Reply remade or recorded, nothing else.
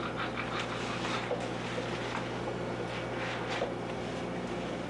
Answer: recorded